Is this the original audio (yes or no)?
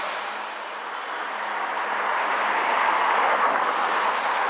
yes